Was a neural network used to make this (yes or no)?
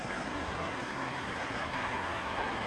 yes